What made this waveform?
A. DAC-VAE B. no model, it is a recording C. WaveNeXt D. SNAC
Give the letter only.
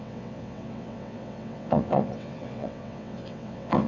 C